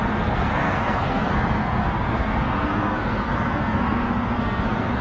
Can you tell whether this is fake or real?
fake